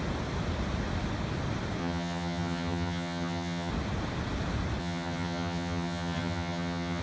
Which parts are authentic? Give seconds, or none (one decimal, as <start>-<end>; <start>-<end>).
0.0-1.8; 3.7-4.8